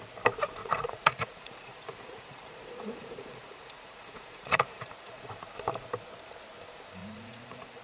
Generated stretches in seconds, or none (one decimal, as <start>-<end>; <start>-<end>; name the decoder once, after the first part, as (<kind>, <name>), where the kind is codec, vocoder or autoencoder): 0.6-5.3 (vocoder, Vocos); 7.0-7.8